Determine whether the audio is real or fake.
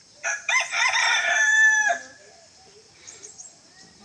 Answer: fake